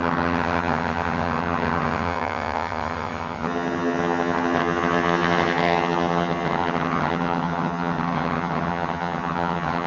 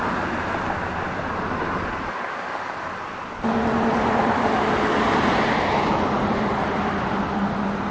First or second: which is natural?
second